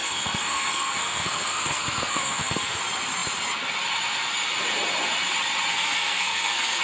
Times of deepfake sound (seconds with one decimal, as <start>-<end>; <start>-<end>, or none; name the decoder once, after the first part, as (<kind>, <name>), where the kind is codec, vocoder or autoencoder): 0.0-2.8 (codec, SNAC); 5.7-6.8